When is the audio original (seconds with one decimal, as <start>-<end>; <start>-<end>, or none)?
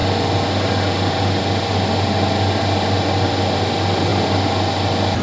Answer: 0.0-5.2